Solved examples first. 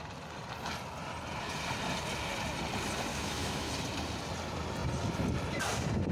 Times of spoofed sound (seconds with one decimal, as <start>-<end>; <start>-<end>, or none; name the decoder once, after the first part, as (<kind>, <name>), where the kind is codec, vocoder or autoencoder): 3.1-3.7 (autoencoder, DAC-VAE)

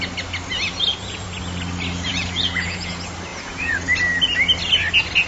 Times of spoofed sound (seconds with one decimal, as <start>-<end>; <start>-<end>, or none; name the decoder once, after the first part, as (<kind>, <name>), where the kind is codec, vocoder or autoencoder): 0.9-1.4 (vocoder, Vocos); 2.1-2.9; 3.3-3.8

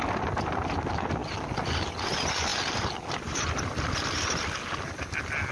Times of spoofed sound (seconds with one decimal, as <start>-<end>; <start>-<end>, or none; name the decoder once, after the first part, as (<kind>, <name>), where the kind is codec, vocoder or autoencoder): none

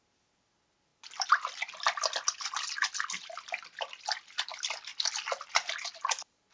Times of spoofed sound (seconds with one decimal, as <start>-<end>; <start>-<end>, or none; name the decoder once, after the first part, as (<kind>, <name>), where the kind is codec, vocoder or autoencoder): none